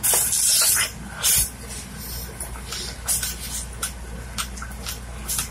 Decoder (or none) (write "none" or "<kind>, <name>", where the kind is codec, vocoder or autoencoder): none